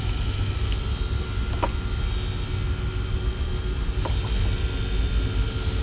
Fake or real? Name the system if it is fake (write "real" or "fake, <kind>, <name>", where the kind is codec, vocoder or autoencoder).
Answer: real